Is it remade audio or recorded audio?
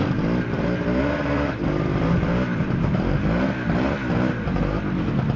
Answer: recorded